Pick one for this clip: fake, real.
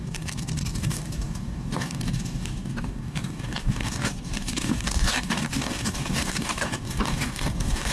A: fake